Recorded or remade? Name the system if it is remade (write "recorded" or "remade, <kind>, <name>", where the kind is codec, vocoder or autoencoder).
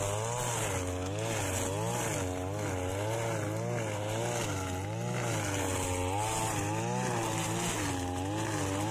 recorded